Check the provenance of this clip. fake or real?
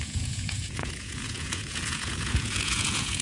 fake